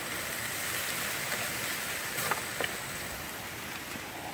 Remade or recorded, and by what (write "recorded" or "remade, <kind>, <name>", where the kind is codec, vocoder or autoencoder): recorded